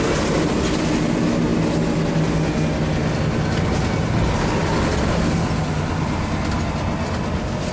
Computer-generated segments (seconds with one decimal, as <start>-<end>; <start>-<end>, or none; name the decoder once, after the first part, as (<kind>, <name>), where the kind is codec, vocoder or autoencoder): none